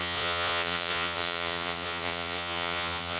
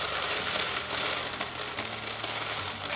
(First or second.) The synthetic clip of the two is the first